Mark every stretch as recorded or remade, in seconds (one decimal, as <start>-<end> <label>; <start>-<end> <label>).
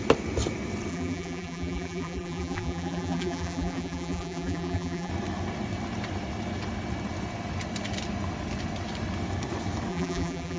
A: 0.0-0.9 recorded; 0.9-5.1 remade; 5.1-9.9 recorded; 9.9-10.6 remade